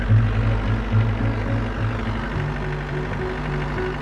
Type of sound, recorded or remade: recorded